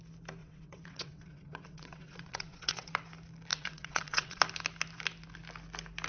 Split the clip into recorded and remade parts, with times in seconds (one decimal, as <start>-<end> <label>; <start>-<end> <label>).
0.0-0.4 recorded; 0.4-2.9 remade; 2.9-3.5 recorded; 3.5-4.4 remade; 4.4-6.1 recorded